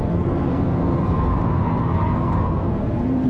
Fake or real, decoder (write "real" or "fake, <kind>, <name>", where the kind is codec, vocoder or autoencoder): fake, codec, SNAC